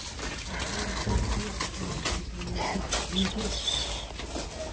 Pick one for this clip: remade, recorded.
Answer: recorded